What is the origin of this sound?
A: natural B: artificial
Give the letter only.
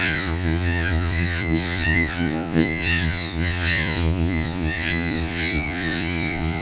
B